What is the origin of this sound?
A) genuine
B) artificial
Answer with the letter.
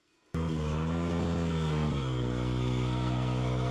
B